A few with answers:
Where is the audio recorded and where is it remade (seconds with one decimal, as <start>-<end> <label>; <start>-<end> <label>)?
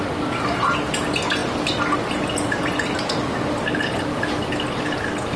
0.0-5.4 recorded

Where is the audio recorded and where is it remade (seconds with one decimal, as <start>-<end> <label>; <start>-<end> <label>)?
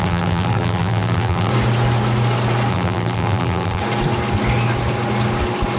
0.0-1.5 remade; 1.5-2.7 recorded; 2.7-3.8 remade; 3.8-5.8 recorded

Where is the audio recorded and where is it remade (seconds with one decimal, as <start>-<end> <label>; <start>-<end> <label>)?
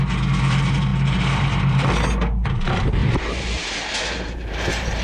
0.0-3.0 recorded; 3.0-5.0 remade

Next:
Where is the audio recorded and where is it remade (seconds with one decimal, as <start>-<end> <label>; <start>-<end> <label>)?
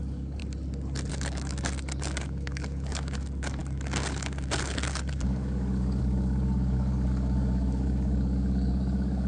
0.0-0.4 remade; 0.4-1.1 recorded; 1.1-9.3 remade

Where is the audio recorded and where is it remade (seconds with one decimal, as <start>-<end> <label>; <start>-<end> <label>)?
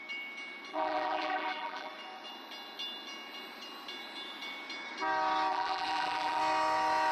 0.0-0.7 recorded; 0.7-1.9 remade; 1.9-5.5 recorded; 5.5-6.4 remade; 6.4-7.1 recorded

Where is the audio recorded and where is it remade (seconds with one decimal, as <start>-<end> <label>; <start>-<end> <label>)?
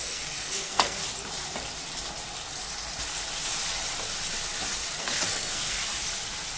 0.0-1.0 remade; 1.0-5.0 recorded; 5.0-5.8 remade; 5.8-6.6 recorded